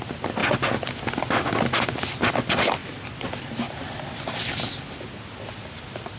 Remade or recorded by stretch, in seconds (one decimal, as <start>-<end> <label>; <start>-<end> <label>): 0.0-6.2 recorded